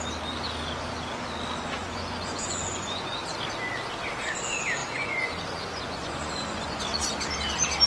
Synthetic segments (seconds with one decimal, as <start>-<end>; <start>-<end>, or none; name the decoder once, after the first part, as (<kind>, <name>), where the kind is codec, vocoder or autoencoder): 1.8-3.2 (vocoder, Vocos); 4.8-7.1